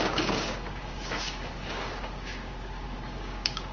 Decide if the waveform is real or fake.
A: fake